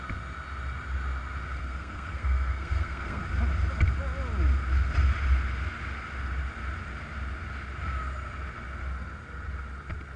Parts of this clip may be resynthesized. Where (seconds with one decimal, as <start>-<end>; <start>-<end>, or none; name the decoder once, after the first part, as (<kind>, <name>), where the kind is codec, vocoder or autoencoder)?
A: 1.6-3.2 (codec, SNAC)